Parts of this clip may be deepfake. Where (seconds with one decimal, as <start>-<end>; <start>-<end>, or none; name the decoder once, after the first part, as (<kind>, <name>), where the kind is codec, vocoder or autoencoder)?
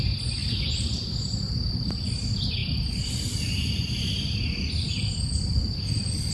none